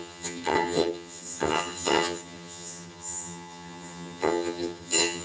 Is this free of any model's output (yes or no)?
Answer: no